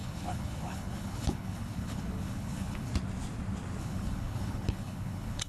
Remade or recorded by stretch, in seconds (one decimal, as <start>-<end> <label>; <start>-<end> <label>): 0.0-2.9 remade; 2.9-3.8 recorded; 3.8-5.5 remade